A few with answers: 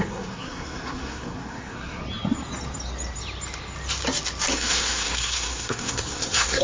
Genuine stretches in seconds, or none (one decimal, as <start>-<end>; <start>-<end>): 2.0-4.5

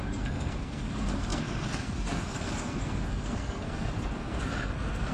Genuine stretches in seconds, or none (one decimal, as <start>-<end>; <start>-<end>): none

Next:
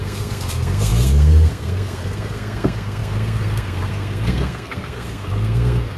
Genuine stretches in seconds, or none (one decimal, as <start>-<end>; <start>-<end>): none

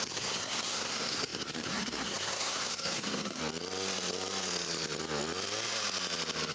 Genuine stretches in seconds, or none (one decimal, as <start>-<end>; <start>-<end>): 3.4-6.5

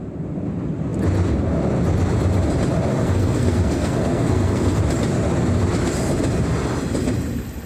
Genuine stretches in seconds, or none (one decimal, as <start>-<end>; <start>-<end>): 0.0-2.9; 4.8-7.7

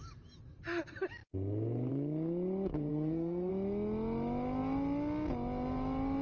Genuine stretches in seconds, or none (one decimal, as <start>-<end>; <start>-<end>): 0.0-2.9; 3.5-6.2